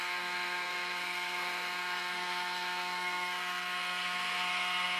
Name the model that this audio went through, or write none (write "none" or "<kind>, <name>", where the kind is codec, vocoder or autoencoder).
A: codec, SNAC